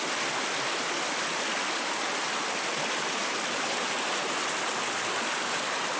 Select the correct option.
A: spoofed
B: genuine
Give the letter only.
B